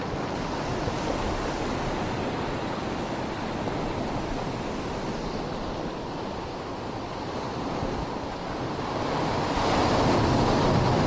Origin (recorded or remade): recorded